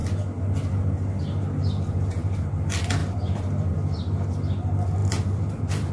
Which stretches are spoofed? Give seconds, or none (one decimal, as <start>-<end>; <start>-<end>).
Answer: 3.0-3.7; 5.0-5.9